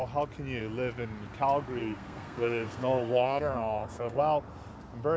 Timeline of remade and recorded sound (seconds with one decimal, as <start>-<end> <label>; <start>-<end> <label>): 0.0-1.8 recorded; 1.8-4.2 remade; 4.2-5.2 recorded